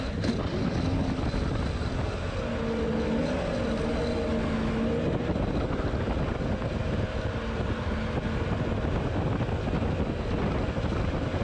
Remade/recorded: recorded